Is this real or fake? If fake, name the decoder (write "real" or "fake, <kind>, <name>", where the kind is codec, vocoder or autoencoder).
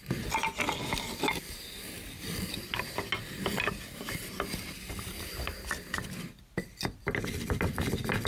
real